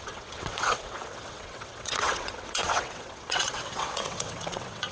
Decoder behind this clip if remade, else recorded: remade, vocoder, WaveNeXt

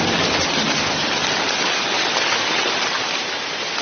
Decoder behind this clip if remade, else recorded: recorded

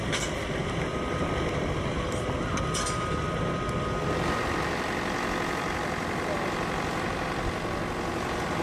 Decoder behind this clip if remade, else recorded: recorded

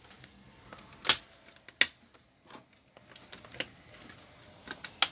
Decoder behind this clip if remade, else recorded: recorded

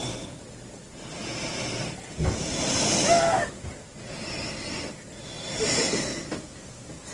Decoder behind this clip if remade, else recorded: recorded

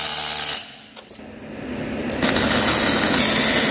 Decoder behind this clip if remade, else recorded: recorded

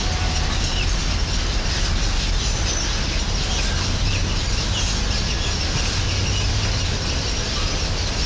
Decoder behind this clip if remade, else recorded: recorded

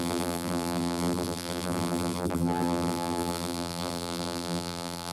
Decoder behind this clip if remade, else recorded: remade, vocoder, BigVGAN v2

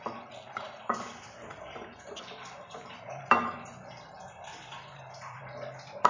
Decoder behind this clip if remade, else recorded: remade, vocoder, BigVGAN v2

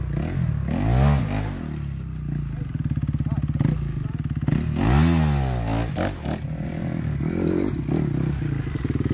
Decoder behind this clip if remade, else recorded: recorded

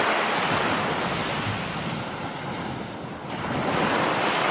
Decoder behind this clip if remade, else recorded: recorded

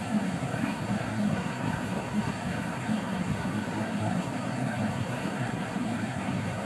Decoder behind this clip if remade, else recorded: remade, codec, SNAC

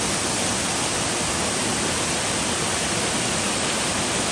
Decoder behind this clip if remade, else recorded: recorded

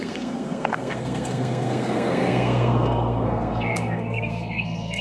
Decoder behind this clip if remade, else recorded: remade, codec, SNAC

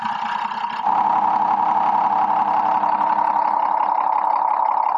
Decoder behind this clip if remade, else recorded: recorded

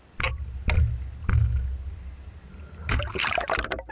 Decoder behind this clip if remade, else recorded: recorded